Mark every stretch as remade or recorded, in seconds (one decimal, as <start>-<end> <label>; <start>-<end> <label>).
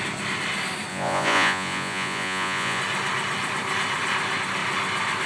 0.0-0.9 recorded; 0.9-2.8 remade; 2.8-5.3 recorded